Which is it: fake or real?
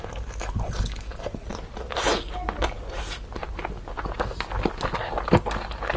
real